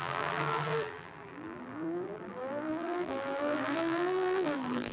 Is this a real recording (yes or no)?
no